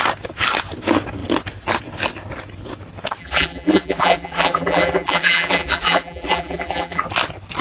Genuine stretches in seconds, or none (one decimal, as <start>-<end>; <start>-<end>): 0.0-3.2; 7.0-7.6